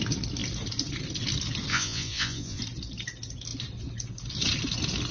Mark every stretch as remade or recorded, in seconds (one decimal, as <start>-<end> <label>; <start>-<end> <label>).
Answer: 0.0-1.7 recorded; 1.7-2.6 remade; 2.6-5.1 recorded